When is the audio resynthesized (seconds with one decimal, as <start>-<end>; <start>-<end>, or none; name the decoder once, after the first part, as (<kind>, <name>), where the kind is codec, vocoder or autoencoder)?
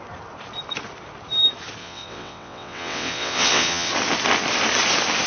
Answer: 1.8-3.9 (vocoder, WaveNeXt)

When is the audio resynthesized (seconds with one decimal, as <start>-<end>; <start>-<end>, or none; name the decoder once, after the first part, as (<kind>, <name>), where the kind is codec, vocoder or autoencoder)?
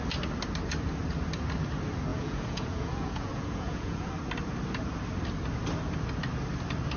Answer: 2.1-4.1 (vocoder, Vocos)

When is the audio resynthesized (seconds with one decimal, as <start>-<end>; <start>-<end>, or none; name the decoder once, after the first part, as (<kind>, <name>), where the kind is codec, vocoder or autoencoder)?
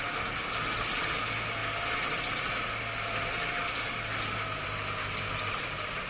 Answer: none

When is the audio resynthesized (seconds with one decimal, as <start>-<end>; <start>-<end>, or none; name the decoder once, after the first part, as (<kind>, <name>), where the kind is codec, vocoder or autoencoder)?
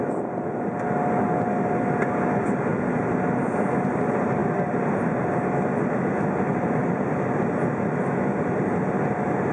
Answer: none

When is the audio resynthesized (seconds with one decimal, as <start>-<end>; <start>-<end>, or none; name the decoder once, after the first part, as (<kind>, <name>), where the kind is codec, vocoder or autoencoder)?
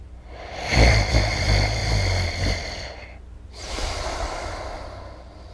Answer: none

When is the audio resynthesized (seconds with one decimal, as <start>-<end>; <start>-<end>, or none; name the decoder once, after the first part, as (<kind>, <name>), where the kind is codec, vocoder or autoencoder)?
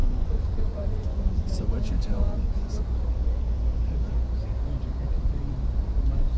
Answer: 0.0-2.8 (vocoder, Vocos)